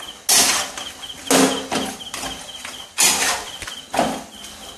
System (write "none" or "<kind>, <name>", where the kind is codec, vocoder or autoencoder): none